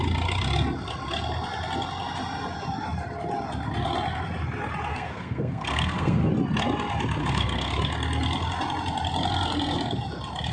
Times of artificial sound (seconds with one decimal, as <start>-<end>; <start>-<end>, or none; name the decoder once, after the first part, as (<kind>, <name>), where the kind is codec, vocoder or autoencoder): 4.9-6.3 (codec, SNAC); 7.2-7.7